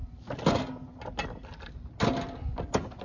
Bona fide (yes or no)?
yes